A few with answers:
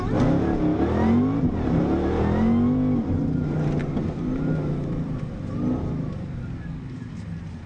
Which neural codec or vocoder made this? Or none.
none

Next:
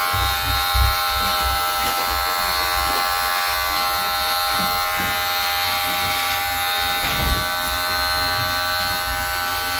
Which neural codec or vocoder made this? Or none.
none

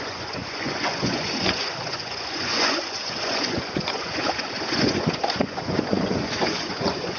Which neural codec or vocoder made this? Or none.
vocoder, Vocos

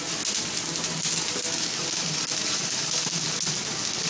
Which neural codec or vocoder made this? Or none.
none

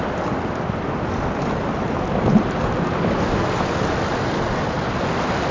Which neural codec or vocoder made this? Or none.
none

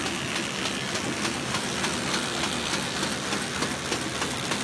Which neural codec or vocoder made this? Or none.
none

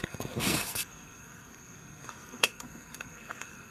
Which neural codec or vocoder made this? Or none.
codec, SNAC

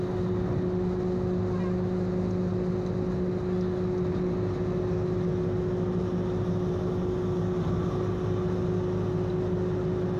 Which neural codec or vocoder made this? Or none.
none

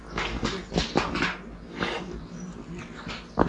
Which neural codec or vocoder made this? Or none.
none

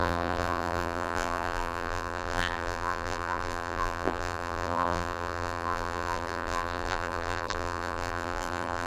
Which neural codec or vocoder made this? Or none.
vocoder, BigVGAN v2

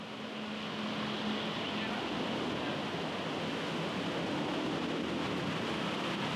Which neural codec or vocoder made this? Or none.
none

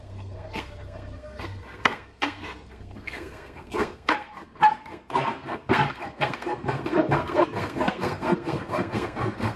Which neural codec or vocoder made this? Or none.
codec, SNAC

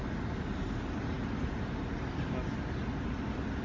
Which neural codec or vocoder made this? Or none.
none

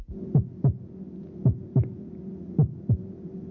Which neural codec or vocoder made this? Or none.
none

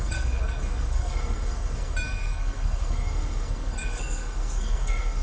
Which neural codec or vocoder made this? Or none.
codec, SNAC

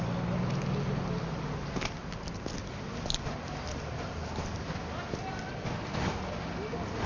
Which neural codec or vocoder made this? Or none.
none